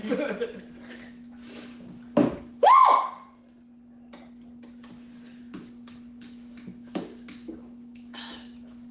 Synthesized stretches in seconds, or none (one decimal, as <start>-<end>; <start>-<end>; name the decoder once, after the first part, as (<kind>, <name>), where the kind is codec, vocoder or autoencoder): 0.9-1.7 (autoencoder, DAC-VAE); 2.4-2.8; 5.4-8.9